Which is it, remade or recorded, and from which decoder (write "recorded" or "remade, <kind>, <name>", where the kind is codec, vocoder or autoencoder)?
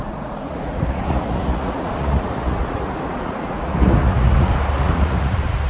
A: remade, vocoder, Vocos